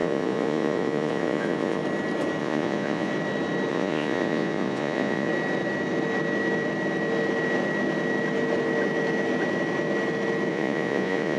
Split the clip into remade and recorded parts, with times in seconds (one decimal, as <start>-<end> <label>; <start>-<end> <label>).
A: 0.0-1.8 remade; 1.8-2.4 recorded; 2.4-3.1 remade; 3.1-3.7 recorded; 3.7-5.3 remade; 5.3-10.5 recorded; 10.5-11.4 remade